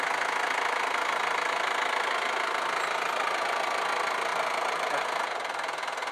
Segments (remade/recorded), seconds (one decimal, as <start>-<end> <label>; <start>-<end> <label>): 0.0-6.1 recorded